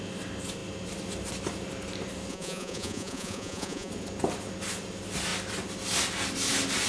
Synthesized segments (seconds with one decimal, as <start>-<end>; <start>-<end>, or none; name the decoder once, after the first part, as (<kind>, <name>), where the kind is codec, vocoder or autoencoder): 2.3-3.9 (vocoder, Vocos)